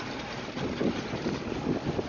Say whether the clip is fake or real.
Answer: real